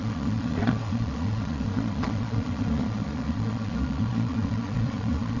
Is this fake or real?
fake